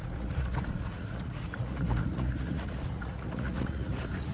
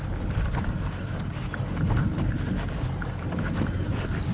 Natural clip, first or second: second